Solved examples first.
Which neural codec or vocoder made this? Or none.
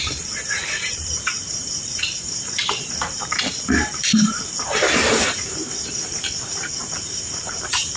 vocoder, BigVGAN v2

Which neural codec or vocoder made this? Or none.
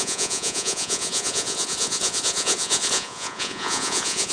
vocoder, Vocos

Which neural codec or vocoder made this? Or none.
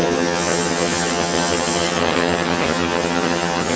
vocoder, HiFi-GAN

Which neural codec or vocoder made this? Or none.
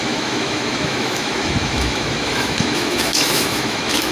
autoencoder, DAC-VAE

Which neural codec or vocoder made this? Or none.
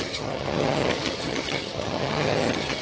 vocoder, HiFi-GAN